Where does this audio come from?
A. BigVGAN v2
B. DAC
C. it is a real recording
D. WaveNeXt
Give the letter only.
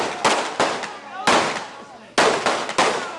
C